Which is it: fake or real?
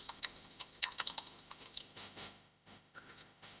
fake